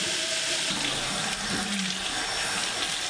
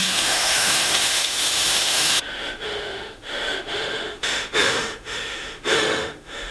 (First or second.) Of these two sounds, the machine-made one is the second